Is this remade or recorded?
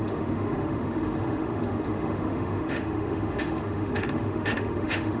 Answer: remade